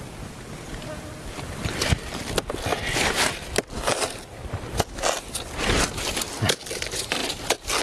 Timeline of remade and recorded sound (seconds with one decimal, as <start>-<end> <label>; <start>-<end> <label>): 0.0-7.8 recorded